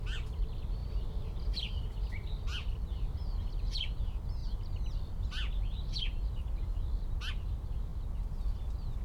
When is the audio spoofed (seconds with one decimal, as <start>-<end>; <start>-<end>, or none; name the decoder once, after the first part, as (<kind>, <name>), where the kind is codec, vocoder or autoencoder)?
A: 0.8-3.6 (vocoder, BigVGAN v2)